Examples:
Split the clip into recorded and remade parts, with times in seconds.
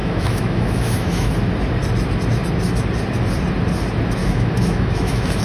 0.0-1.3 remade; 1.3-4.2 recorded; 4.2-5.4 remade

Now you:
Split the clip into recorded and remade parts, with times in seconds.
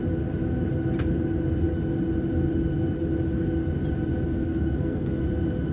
0.0-4.3 recorded; 4.3-5.2 remade; 5.2-5.7 recorded